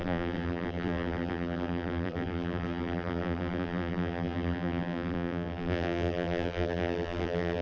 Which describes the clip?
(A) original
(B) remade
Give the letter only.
B